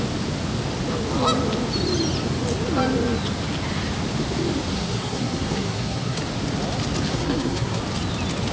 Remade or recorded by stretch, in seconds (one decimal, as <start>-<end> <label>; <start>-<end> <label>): 0.0-4.7 recorded; 4.7-6.2 remade; 6.2-7.1 recorded; 7.1-7.8 remade; 7.8-8.5 recorded